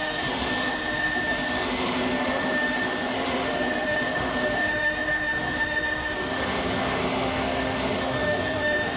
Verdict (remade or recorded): remade